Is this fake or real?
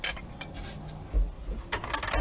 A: real